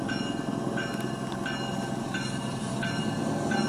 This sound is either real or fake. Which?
real